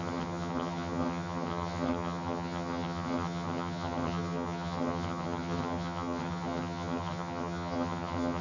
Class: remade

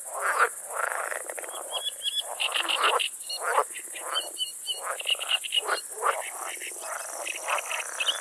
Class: recorded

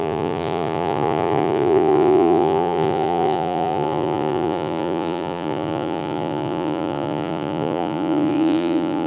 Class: remade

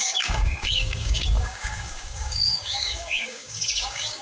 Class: remade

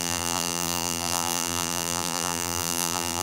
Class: remade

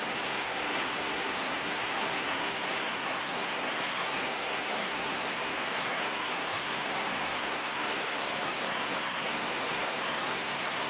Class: remade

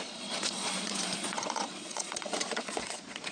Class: remade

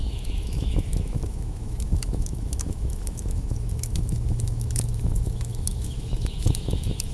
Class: remade